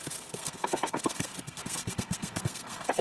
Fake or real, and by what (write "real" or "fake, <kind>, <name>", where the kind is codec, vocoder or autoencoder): fake, codec, SNAC